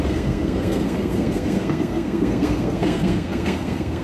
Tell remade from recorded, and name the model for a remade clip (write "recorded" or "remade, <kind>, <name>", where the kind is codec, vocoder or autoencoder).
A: remade, codec, SNAC